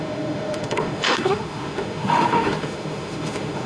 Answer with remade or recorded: remade